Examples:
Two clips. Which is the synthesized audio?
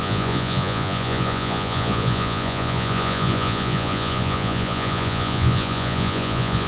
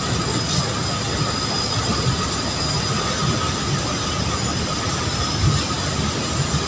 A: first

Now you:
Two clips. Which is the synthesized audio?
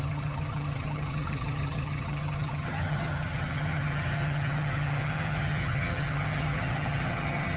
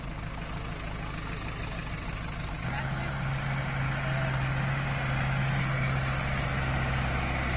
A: first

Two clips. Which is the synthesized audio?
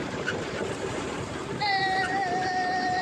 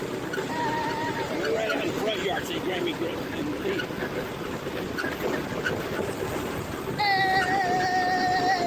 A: first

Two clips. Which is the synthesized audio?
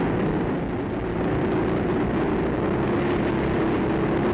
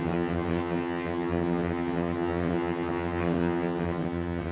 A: second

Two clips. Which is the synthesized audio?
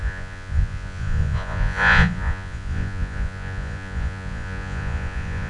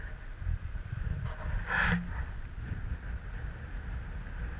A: first